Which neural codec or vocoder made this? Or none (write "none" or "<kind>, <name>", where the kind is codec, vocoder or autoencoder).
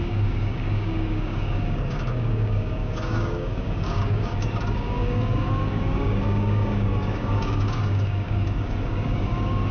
codec, DAC